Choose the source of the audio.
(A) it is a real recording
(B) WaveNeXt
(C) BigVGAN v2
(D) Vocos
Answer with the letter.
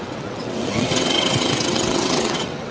B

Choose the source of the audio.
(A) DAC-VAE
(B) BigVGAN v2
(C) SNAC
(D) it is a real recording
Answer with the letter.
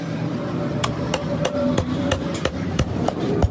B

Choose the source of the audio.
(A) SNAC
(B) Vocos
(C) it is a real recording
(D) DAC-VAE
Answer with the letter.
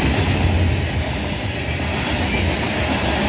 C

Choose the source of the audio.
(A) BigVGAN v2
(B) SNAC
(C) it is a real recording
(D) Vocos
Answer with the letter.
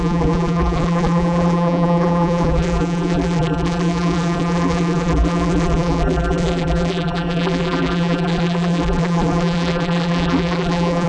A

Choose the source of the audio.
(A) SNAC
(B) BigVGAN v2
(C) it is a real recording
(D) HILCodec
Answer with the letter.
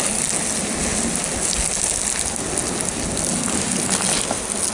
C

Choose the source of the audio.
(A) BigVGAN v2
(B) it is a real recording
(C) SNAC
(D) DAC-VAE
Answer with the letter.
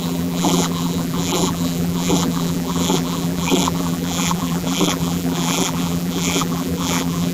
A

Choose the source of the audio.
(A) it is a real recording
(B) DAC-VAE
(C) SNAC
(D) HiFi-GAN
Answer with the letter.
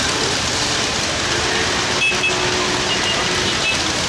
A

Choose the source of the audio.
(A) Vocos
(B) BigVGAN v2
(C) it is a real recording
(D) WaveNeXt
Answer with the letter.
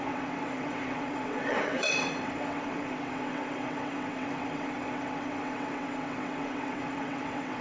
D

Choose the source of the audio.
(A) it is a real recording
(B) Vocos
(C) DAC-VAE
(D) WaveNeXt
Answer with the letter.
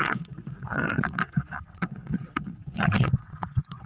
D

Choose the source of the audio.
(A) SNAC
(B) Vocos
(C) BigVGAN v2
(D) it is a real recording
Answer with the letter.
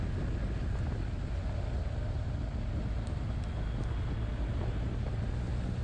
D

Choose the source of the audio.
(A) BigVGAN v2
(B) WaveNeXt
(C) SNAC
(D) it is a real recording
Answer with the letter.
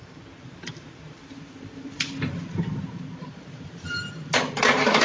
A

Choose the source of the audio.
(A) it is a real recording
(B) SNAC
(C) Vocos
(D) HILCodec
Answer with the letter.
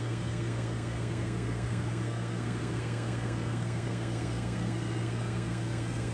B